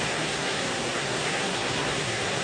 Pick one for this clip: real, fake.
fake